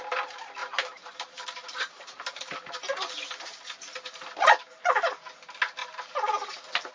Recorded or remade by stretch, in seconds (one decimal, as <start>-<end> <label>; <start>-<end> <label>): 0.0-0.6 recorded; 0.6-4.7 remade; 4.7-5.8 recorded; 5.8-6.9 remade